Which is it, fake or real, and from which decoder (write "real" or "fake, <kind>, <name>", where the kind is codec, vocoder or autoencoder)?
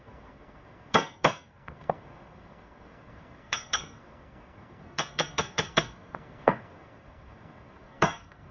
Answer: fake, codec, SNAC